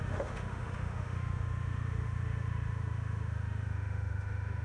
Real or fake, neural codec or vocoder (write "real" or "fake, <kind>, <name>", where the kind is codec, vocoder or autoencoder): fake, autoencoder, DAC-VAE